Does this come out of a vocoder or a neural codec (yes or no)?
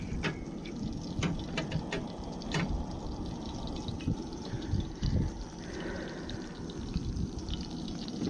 yes